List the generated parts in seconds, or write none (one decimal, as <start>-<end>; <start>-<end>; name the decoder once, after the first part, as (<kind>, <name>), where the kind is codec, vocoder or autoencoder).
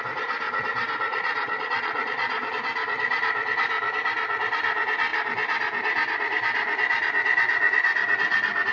1.1-2.5 (vocoder, Vocos)